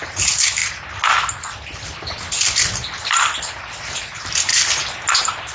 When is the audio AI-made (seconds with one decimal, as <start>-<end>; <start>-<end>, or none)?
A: 0.0-0.6; 3.9-4.5; 5.1-5.5